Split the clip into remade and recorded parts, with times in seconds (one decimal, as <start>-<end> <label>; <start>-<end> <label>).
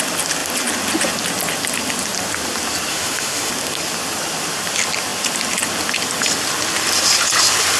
0.0-2.9 recorded; 2.9-3.5 remade; 3.5-7.8 recorded